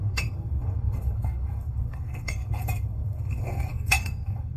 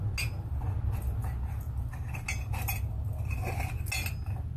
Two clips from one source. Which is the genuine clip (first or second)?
second